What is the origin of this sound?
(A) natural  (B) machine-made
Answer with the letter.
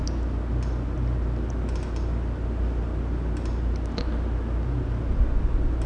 A